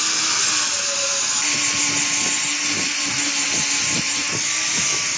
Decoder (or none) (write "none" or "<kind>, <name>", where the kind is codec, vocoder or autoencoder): none